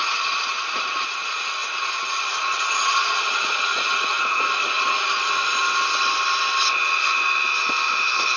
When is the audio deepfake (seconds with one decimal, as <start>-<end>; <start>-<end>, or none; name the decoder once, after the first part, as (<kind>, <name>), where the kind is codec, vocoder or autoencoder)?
0.0-5.6 (vocoder, Vocos); 8.0-8.4